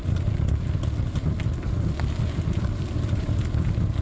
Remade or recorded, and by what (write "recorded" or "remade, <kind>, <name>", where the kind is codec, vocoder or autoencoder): recorded